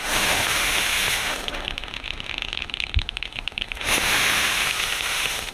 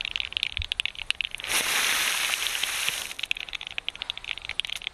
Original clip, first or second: second